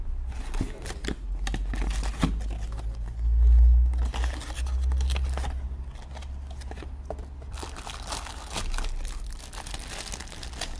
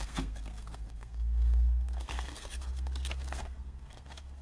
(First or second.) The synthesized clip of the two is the second